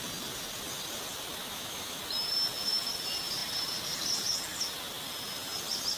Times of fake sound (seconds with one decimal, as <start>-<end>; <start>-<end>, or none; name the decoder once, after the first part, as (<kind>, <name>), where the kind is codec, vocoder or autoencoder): 1.4-2.0 (autoencoder, DAC-VAE)